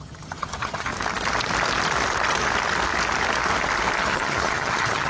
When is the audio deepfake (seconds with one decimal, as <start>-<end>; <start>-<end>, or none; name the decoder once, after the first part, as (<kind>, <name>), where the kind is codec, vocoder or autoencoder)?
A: 0.0-0.9 (vocoder, HiFi-GAN); 4.0-5.1